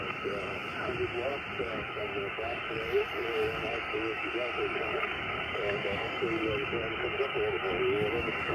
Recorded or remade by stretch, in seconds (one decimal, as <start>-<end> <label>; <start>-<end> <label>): 0.0-0.7 remade; 0.7-1.6 recorded; 1.6-8.5 remade